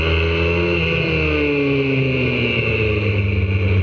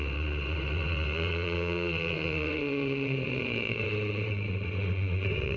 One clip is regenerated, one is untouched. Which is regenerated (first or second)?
second